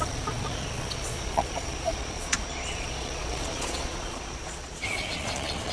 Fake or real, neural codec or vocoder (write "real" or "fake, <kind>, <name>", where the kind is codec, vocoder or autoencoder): fake, vocoder, Vocos